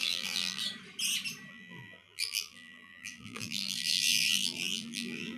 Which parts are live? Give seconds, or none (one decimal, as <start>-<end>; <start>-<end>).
0.6-1.5